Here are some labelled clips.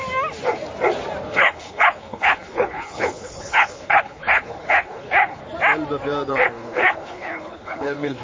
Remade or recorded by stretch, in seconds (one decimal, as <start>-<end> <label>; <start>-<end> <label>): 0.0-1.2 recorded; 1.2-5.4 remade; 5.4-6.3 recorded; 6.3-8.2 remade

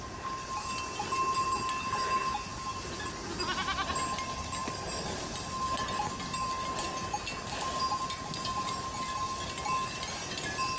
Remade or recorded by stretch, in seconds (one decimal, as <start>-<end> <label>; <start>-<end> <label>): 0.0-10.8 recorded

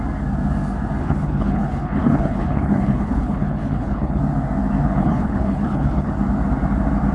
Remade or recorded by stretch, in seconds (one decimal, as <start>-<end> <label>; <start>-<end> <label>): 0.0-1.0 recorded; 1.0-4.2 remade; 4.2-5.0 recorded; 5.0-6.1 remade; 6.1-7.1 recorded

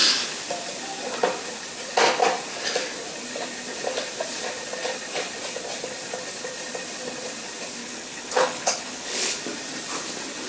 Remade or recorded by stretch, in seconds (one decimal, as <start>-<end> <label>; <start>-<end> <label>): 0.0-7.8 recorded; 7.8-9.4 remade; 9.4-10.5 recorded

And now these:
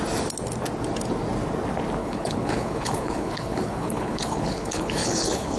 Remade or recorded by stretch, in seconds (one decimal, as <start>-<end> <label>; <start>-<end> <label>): 0.0-2.0 recorded; 2.0-5.6 remade